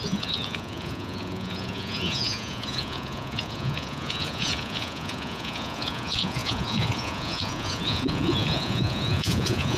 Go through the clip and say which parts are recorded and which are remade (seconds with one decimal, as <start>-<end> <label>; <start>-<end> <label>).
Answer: 0.0-9.8 remade